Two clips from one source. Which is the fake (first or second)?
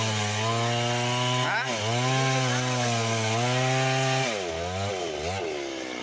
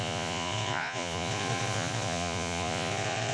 second